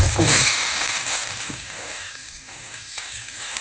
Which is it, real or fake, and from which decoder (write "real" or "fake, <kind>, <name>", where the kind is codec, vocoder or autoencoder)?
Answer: fake, codec, DAC